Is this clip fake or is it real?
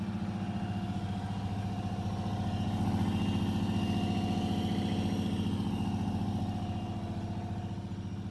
real